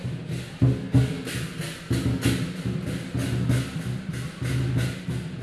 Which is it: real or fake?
real